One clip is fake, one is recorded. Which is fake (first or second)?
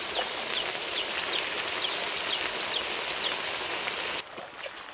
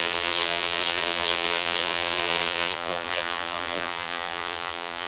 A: second